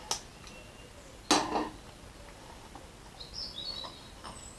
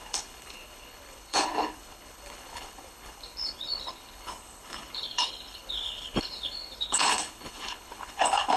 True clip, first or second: first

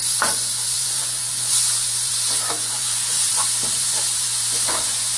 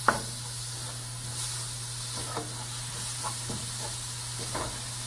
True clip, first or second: second